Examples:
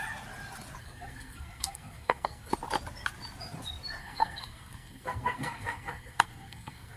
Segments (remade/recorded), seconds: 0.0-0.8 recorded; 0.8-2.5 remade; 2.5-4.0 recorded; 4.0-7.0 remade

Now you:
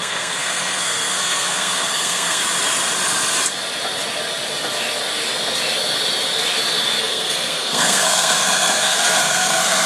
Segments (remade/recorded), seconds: 0.0-2.4 remade; 2.4-7.0 recorded; 7.0-9.9 remade